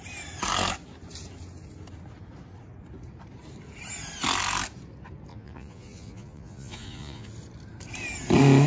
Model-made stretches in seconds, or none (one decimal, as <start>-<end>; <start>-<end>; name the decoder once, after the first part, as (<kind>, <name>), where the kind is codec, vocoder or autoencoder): 5.3-7.3 (vocoder, Vocos)